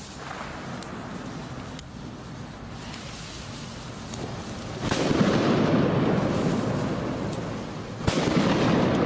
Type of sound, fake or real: real